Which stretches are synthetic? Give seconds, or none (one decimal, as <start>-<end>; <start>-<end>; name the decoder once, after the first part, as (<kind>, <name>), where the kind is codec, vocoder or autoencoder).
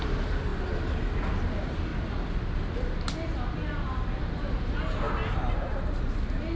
none